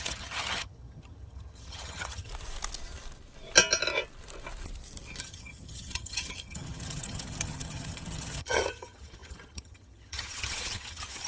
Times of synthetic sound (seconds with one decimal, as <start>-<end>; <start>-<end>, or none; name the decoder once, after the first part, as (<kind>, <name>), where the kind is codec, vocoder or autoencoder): 0.0-2.3 (vocoder, HiFi-GAN); 5.2-11.3

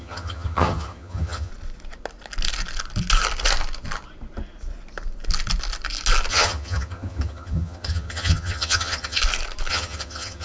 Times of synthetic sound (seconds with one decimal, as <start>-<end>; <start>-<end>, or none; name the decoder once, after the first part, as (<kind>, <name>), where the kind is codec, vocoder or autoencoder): 0.0-1.5 (vocoder, HiFi-GAN); 6.3-9.2; 9.7-10.4

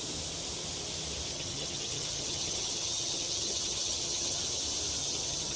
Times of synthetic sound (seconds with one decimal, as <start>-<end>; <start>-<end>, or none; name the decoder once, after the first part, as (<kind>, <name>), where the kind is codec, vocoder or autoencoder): 1.3-4.4 (vocoder, HiFi-GAN); 5.0-5.6

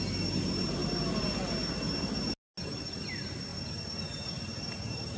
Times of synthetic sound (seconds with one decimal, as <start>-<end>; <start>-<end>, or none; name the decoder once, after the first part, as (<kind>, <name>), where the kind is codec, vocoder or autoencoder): none

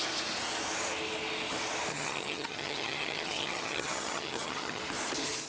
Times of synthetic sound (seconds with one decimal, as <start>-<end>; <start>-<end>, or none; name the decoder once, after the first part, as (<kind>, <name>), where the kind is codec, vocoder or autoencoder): 1.9-4.8 (vocoder, HiFi-GAN)

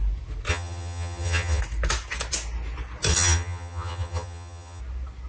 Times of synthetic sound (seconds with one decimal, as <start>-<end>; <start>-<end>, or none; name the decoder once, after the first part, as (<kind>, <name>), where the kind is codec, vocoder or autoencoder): 0.5-1.6 (vocoder, HiFi-GAN); 3.1-4.8